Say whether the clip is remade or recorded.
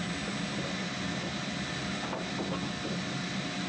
recorded